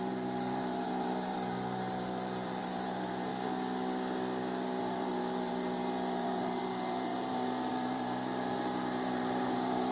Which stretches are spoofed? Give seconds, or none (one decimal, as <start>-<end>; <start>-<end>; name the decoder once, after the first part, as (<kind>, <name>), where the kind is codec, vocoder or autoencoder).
0.0-3.3 (vocoder, BigVGAN v2); 4.8-9.9